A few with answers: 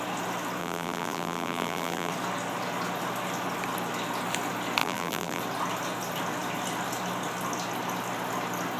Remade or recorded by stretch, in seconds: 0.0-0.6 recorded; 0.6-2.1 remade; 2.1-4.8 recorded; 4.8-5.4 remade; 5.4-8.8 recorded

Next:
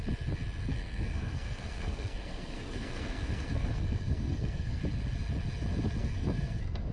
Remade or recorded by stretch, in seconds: 0.0-0.7 recorded; 0.7-4.8 remade; 4.8-6.0 recorded; 6.0-6.9 remade

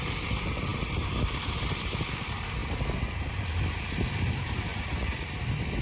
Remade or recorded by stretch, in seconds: 0.0-4.7 recorded; 4.7-5.3 remade; 5.3-5.8 recorded

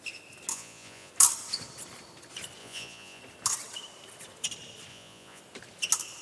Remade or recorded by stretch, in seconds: 0.0-0.5 recorded; 0.5-1.1 remade; 1.1-2.6 recorded; 2.6-3.2 remade; 3.2-4.9 recorded; 4.9-5.4 remade; 5.4-6.2 recorded

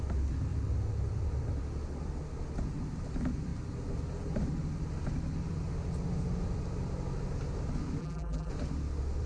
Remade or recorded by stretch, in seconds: 0.0-8.0 recorded; 8.0-8.5 remade; 8.5-9.3 recorded

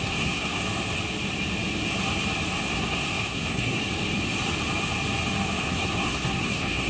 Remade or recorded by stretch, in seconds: 0.0-0.6 remade; 0.6-2.7 recorded; 2.7-3.8 remade; 3.8-5.6 recorded; 5.6-6.9 remade